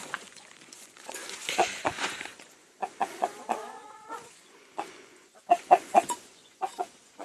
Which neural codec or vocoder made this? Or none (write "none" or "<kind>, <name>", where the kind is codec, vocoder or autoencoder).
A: vocoder, Vocos